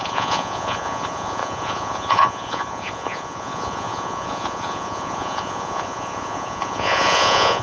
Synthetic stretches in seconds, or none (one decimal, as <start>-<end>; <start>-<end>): 0.0-7.6